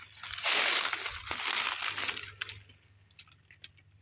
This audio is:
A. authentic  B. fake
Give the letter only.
A